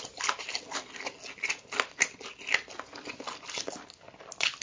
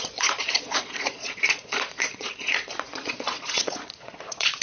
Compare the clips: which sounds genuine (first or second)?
first